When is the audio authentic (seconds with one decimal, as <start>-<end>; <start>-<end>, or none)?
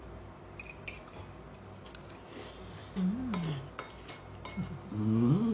0.0-5.5